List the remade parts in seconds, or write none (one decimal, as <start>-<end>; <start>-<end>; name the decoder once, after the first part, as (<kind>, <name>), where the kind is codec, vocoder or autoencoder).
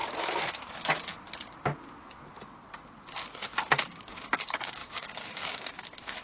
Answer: 3.7-6.2 (codec, DAC)